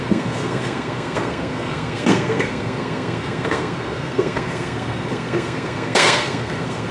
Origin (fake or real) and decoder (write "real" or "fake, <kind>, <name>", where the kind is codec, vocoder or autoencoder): fake, codec, SNAC